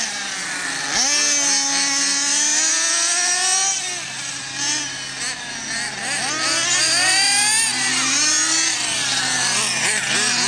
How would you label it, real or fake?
real